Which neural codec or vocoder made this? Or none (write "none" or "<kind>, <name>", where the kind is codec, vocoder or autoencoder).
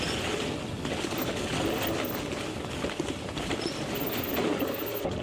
none